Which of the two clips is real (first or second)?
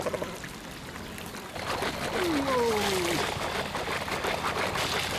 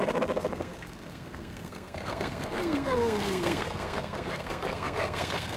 first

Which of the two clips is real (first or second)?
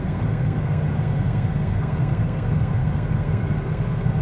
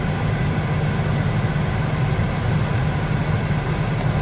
second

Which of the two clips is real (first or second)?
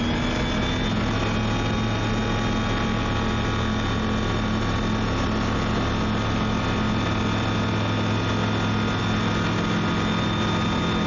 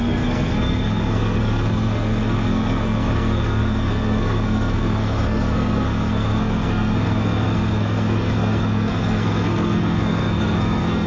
first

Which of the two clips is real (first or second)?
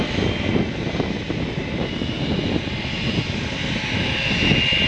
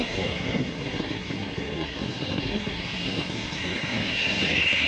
first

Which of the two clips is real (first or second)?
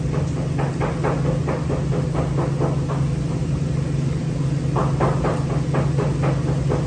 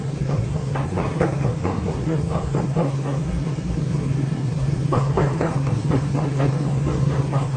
first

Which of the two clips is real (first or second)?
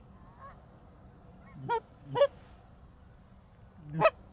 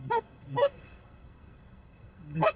first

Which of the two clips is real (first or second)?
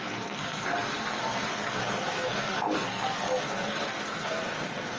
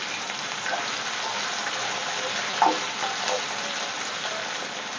second